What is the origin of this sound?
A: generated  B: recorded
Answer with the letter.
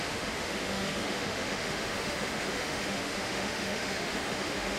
A